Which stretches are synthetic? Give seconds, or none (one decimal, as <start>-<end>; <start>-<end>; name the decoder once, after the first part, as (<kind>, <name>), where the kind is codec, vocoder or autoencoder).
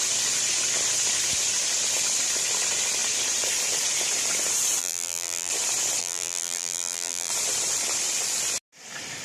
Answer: 4.8-5.5 (vocoder, BigVGAN v2); 6.0-7.3